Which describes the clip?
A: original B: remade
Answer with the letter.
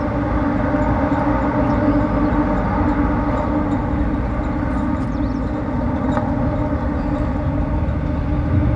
A